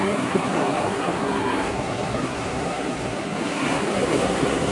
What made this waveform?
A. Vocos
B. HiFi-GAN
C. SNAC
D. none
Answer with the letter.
C